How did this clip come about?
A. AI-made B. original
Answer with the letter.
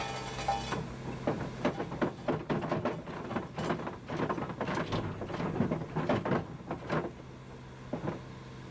B